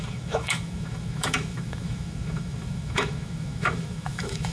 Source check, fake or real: fake